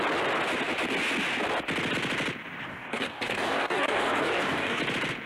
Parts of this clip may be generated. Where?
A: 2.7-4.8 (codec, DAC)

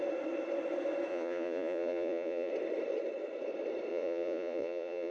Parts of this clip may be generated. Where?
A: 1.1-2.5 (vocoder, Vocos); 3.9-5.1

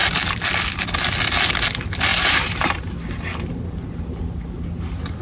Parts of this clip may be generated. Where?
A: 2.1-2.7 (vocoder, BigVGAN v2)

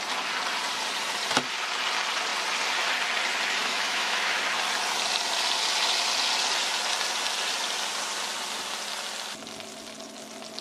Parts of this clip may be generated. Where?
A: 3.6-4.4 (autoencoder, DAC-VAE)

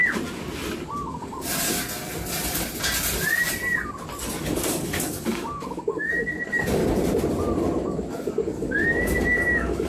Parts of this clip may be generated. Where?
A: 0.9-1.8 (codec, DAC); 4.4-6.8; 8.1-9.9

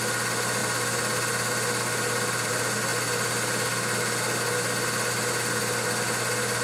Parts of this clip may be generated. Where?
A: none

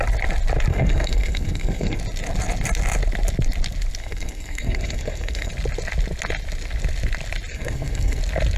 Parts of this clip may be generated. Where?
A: 0.7-2.0 (codec, SNAC); 4.0-5.5; 7.5-8.2